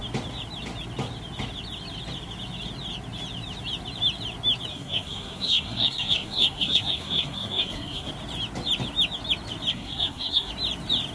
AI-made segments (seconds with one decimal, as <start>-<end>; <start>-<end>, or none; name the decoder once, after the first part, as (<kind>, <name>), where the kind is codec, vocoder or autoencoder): 4.7-8.1 (codec, SNAC); 9.7-10.5